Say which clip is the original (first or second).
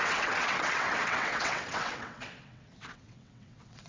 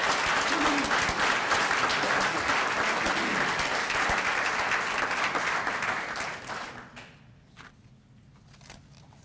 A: second